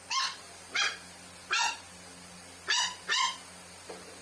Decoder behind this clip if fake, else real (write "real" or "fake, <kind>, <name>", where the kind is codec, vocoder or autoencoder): real